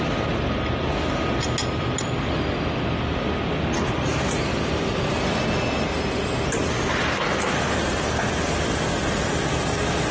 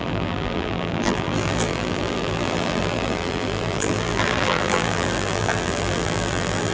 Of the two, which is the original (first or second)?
first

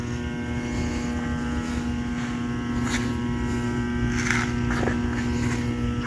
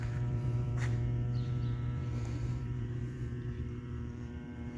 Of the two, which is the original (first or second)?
first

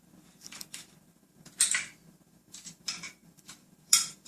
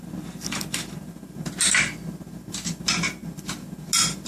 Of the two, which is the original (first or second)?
second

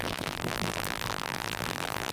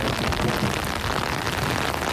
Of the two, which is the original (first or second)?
second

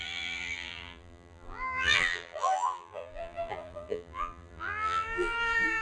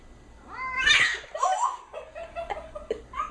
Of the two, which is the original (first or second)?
second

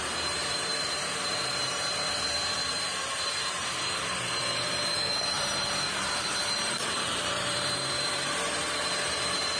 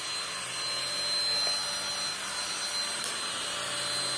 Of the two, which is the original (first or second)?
second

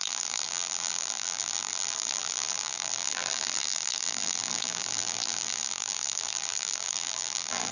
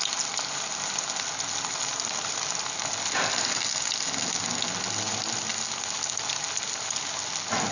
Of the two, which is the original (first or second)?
second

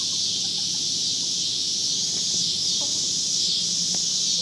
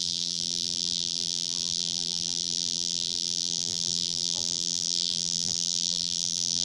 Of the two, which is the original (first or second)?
first